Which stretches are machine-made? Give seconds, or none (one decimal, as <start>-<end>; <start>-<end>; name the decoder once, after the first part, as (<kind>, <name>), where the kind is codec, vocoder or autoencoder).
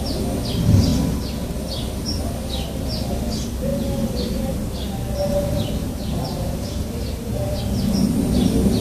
5.8-7.6 (vocoder, BigVGAN v2)